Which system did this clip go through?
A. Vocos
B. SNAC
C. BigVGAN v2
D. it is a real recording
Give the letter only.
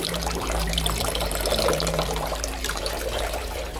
C